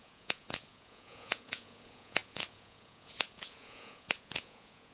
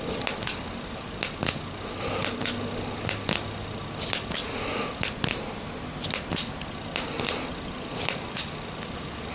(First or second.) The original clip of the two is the second